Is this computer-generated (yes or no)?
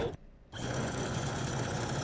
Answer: yes